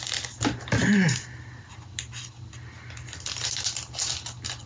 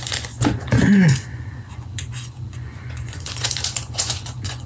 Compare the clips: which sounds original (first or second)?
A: first